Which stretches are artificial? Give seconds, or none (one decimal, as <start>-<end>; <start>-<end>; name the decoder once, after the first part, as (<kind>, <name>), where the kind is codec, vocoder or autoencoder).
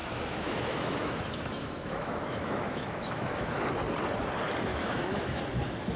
0.0-3.6 (autoencoder, DAC-VAE); 4.7-5.4